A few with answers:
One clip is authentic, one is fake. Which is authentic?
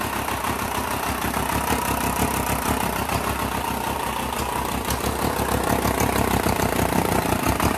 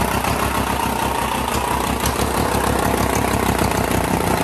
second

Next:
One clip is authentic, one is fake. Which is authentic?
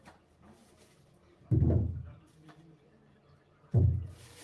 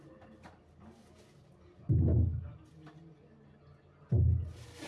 second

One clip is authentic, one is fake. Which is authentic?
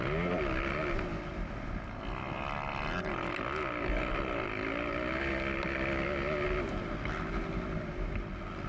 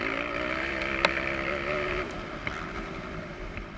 first